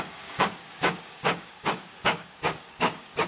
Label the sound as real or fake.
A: fake